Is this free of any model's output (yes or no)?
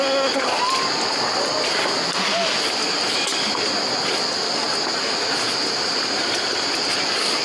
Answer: yes